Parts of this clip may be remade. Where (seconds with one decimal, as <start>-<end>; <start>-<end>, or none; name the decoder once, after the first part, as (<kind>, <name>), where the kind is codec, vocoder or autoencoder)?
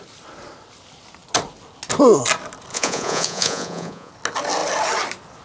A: 2.7-4.1 (vocoder, Vocos)